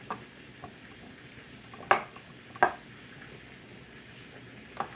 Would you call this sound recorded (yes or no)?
yes